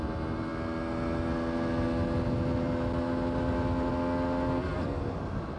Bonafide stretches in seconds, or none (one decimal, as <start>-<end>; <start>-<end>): 0.0-5.6